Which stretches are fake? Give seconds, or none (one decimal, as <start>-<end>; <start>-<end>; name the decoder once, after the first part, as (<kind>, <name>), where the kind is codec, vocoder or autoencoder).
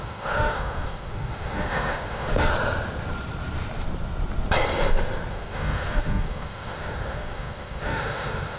0.0-2.5 (autoencoder, DAC-VAE); 5.3-8.6